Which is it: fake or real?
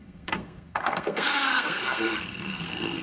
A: fake